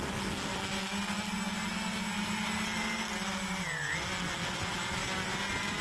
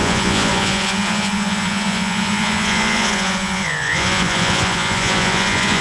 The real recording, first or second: first